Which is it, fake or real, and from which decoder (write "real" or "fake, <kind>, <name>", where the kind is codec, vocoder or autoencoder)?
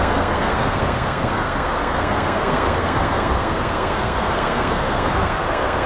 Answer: fake, codec, SNAC